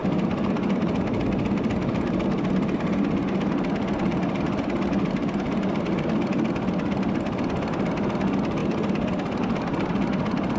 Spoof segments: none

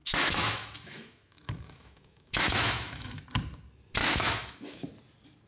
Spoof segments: 0.0-3.2; 4.0-4.9